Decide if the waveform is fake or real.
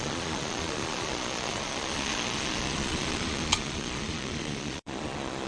fake